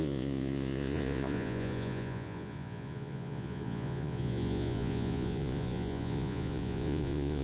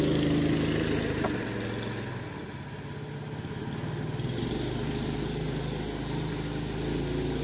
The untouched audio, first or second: second